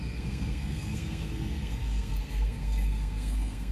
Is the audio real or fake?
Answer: fake